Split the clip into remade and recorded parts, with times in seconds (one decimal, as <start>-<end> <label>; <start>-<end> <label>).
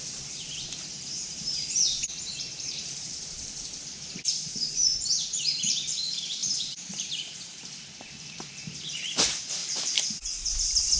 0.0-9.6 remade; 9.6-10.5 recorded; 10.5-11.0 remade